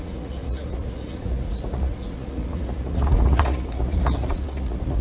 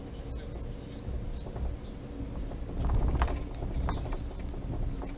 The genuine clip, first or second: second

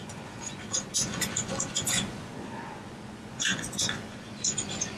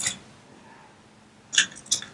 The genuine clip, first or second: second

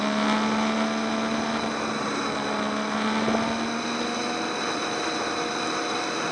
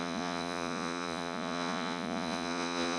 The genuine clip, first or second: first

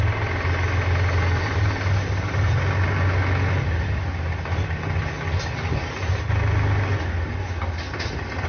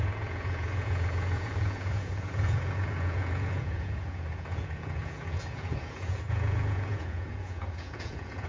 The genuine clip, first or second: first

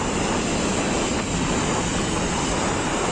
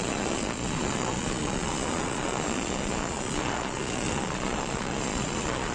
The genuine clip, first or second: first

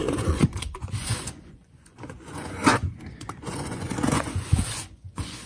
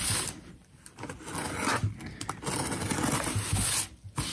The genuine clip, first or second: second